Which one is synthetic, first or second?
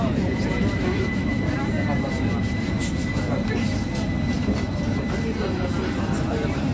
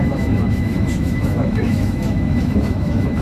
second